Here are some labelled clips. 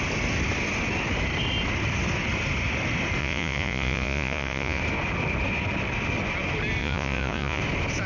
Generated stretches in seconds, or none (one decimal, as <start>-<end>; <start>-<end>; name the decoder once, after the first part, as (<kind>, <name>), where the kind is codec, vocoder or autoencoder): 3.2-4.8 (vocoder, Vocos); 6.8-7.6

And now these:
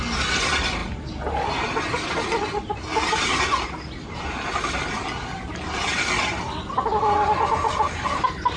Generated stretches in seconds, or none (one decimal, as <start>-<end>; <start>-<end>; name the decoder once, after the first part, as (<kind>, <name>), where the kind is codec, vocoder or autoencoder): none

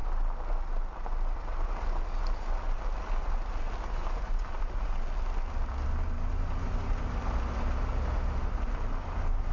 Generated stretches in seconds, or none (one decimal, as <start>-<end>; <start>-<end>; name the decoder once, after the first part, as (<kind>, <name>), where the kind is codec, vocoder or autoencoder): none

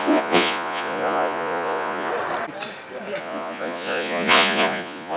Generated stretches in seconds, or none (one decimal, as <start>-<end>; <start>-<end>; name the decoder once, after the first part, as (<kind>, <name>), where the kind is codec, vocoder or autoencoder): 0.0-2.1 (vocoder, Vocos); 3.2-5.2

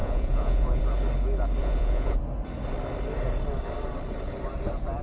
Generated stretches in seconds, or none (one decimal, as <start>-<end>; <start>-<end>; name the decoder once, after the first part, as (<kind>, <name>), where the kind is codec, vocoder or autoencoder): 0.0-0.8 (vocoder, Vocos); 1.6-2.2

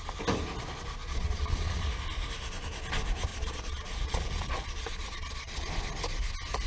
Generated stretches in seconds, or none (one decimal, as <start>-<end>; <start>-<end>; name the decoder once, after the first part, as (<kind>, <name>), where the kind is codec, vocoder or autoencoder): 1.0-1.9 (vocoder, Vocos); 3.3-5.7

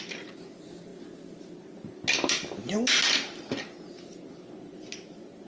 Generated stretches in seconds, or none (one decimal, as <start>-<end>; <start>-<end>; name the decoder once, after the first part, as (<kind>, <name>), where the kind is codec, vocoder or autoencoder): none